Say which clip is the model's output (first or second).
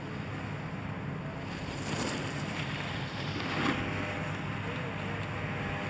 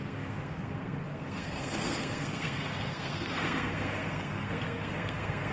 second